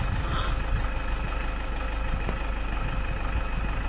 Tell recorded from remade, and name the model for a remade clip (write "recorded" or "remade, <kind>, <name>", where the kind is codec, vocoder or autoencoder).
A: recorded